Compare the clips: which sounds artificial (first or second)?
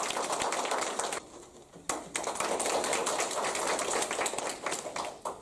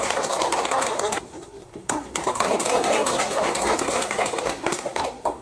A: second